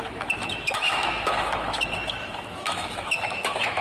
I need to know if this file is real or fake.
fake